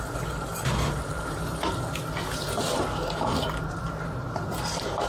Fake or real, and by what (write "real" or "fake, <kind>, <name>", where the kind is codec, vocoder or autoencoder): real